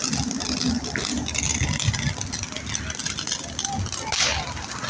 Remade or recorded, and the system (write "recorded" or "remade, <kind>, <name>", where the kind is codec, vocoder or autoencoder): recorded